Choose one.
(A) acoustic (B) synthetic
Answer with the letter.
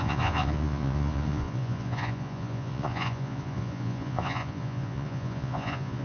B